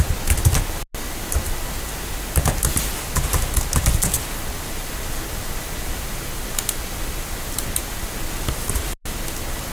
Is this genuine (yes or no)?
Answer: yes